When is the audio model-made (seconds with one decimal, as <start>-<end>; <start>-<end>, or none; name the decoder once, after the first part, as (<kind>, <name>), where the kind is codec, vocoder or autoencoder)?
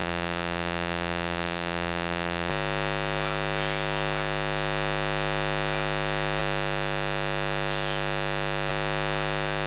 0.0-2.5 (vocoder, BigVGAN v2)